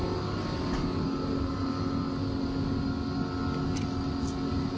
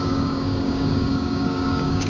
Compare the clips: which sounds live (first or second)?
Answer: first